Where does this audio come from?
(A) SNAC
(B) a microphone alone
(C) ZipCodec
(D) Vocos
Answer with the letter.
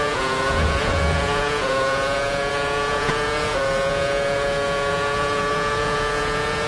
D